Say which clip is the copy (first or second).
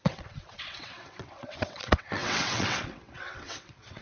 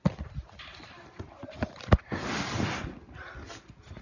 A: first